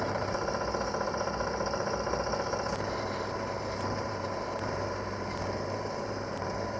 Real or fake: fake